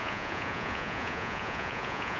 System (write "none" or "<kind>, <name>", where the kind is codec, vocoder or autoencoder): vocoder, Vocos